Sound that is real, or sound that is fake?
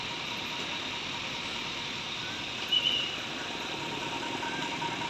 real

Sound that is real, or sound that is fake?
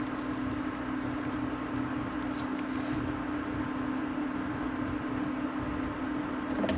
real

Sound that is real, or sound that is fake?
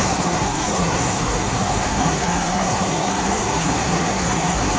fake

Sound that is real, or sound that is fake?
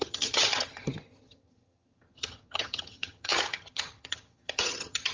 fake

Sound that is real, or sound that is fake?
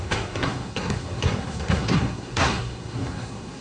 fake